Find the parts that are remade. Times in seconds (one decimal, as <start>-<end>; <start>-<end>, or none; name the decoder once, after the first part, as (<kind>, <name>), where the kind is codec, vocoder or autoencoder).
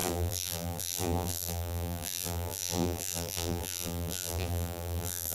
0.0-5.3 (vocoder, BigVGAN v2)